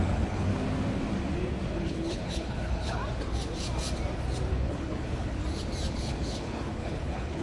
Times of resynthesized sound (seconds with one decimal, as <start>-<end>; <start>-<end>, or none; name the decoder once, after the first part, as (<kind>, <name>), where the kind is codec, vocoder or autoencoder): 0.0-0.5 (codec, HILCodec); 1.7-3.0; 4.5-5.4; 5.9-7.4